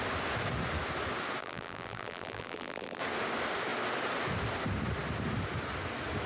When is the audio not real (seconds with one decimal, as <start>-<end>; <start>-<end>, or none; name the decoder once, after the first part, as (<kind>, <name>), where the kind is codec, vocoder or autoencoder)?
1.4-3.0 (vocoder, BigVGAN v2)